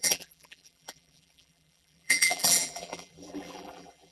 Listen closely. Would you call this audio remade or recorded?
remade